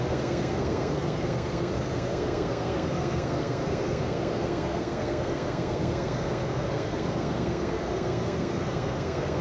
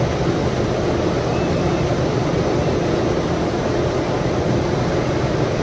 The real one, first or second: second